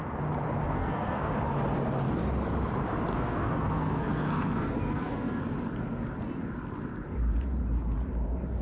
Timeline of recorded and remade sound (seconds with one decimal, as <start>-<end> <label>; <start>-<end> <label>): 0.0-0.8 recorded; 0.8-1.3 remade; 1.3-3.1 recorded; 3.1-5.4 remade; 5.4-8.6 recorded